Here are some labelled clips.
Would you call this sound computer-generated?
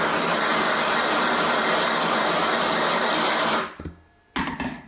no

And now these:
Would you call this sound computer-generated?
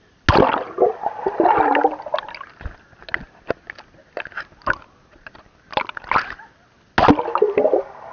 no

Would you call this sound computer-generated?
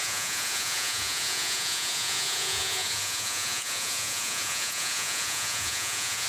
yes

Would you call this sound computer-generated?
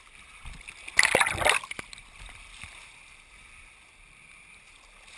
no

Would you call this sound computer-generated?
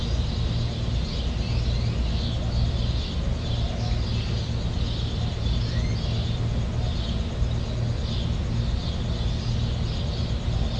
no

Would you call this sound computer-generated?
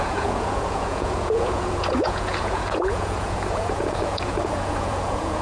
yes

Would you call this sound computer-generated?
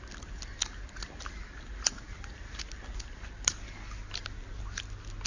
no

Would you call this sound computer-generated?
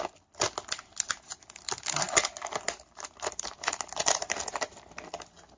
no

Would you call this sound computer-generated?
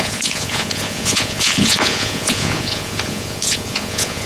yes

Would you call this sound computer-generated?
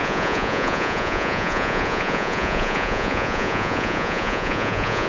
yes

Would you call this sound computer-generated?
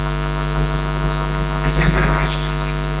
no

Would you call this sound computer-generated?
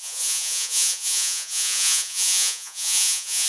yes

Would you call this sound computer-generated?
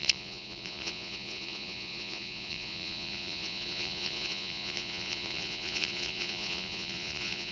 yes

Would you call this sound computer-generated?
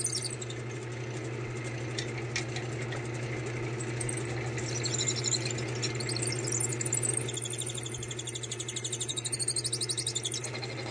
no